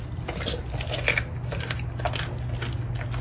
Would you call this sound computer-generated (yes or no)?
no